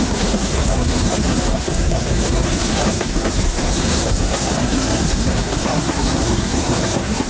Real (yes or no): no